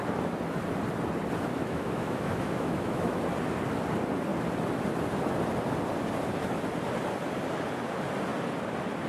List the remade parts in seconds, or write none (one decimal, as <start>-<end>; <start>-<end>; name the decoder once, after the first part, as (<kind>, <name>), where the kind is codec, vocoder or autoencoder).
1.5-3.2 (autoencoder, DAC-VAE)